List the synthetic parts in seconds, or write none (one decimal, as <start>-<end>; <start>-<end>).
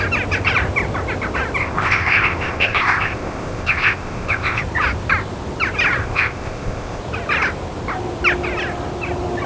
1.6-4.6; 6.0-7.0